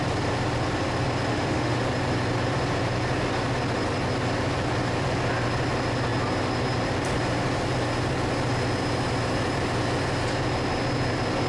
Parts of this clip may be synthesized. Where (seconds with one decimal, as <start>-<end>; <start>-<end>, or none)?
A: 1.3-1.8